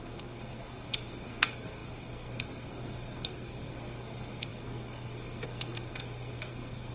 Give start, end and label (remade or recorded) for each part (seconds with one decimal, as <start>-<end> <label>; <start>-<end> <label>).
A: 0.0-6.9 remade